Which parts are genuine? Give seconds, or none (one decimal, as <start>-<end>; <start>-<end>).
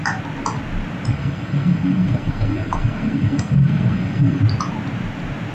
0.0-1.1; 4.4-5.5